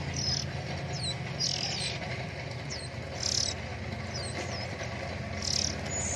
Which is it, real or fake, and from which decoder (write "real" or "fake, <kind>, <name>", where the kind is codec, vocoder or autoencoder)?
real